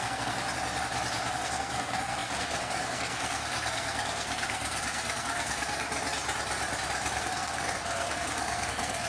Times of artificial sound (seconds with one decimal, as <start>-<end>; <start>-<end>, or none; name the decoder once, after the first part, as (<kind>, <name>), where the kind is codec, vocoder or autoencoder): 0.0-0.4 (codec, SNAC); 1.3-5.8; 7.2-9.1